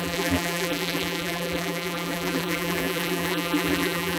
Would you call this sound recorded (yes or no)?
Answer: no